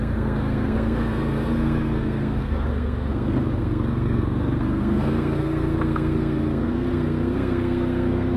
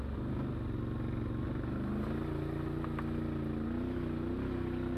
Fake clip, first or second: first